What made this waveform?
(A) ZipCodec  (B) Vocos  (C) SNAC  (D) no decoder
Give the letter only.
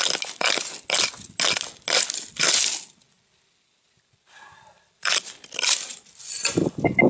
D